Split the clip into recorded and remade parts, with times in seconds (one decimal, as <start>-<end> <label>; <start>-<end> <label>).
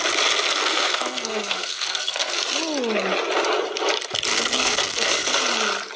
0.0-0.6 recorded; 0.6-2.4 remade; 2.4-4.3 recorded; 4.3-5.4 remade; 5.4-6.0 recorded